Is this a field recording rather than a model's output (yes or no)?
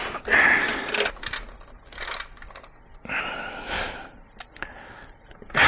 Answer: yes